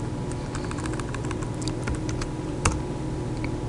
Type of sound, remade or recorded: recorded